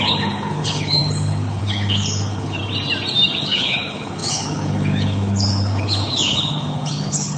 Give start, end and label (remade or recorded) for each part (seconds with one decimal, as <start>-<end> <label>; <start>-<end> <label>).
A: 0.0-2.6 remade; 2.6-3.4 recorded; 3.4-7.4 remade